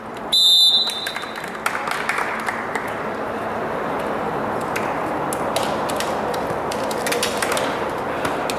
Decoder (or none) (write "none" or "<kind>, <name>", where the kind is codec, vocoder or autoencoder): none